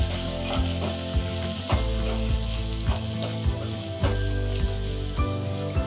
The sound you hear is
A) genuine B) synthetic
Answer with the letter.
A